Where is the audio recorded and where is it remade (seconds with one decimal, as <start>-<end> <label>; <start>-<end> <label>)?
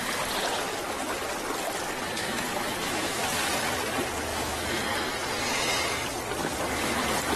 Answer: 0.0-2.2 recorded; 2.2-3.3 remade; 3.3-4.3 recorded; 4.3-4.8 remade; 4.8-7.4 recorded